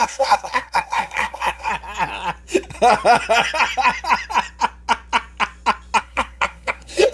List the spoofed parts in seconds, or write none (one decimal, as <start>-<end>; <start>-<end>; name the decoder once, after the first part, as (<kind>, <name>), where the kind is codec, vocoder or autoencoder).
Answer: 0.0-1.7 (codec, SNAC); 6.0-7.1